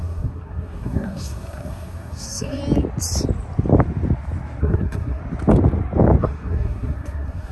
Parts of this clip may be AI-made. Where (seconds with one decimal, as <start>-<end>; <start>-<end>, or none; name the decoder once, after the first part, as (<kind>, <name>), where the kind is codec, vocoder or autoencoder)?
0.0-2.6 (codec, SNAC); 4.6-5.2; 6.2-7.5